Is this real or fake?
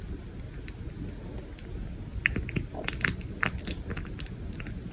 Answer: real